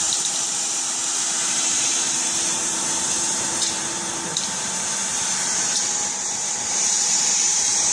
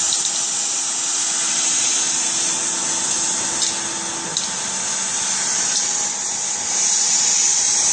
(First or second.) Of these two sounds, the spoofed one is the first